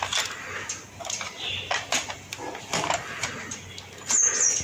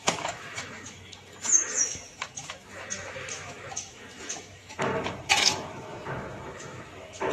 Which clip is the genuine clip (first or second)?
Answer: first